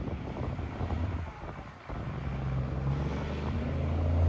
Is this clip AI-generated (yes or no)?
no